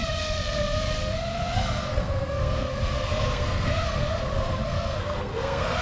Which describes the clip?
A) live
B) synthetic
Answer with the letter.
B